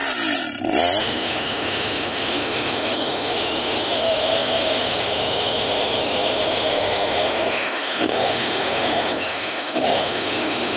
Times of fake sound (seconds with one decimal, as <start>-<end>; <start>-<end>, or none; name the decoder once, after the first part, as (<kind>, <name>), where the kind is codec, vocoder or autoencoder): 1.0-10.8 (autoencoder, DAC-VAE)